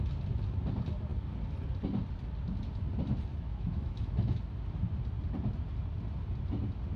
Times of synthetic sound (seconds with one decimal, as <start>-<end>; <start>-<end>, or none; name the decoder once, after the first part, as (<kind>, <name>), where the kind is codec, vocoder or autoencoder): 3.3-4.4 (autoencoder, DAC-VAE)